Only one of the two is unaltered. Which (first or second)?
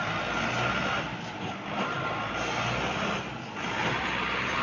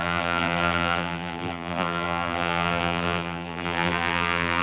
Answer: first